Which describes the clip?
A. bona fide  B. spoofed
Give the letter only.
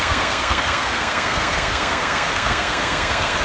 B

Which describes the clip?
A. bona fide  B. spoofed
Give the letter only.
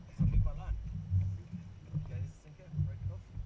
A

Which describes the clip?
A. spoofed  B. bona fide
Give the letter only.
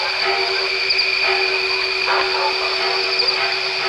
B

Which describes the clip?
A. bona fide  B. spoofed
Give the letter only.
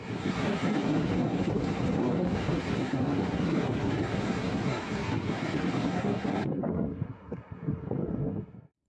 B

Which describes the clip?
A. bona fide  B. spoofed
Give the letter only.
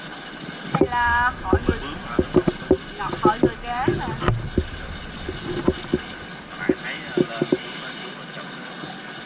A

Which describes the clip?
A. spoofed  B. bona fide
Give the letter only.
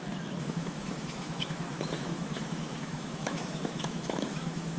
A